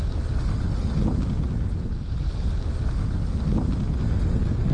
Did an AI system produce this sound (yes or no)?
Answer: no